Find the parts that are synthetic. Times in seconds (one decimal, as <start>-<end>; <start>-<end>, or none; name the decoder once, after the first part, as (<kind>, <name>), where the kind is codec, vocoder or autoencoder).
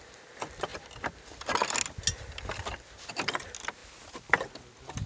none